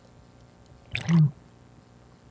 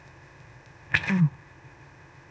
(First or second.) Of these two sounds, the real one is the first